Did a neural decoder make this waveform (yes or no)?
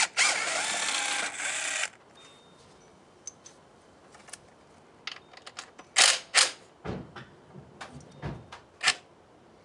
no